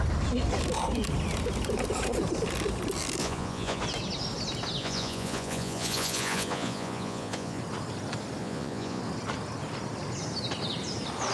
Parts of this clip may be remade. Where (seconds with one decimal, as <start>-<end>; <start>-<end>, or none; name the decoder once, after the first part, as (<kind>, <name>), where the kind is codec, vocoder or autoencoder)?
3.2-3.8 (vocoder, Vocos); 4.8-7.6; 8.4-9.0